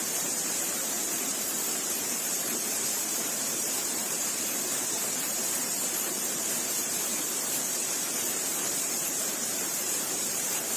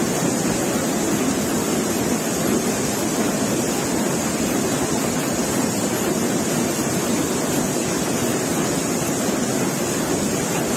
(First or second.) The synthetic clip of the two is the first